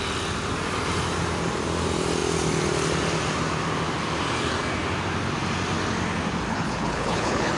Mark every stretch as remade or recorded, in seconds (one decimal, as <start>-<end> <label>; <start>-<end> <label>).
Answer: 0.0-6.5 recorded; 6.5-7.6 remade